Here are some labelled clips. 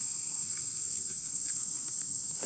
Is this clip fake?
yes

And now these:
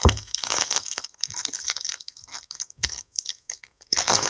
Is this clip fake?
yes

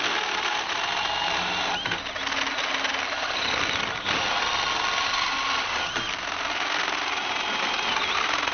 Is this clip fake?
no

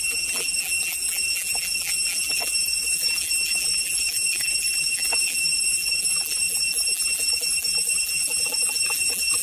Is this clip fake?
yes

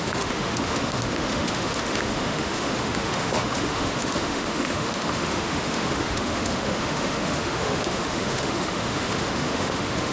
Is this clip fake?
yes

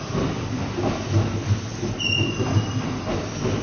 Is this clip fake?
no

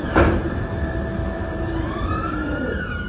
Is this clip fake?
yes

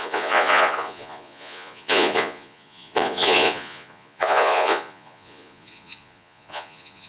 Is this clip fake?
yes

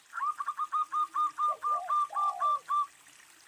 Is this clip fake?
no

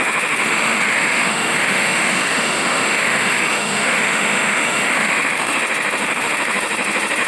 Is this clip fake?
yes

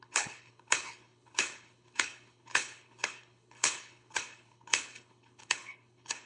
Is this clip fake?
yes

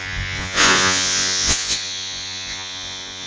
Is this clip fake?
yes